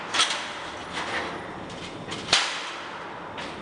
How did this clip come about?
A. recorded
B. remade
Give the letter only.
A